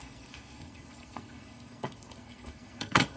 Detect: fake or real fake